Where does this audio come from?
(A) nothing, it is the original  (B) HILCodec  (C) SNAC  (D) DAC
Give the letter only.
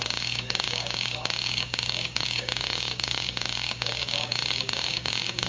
D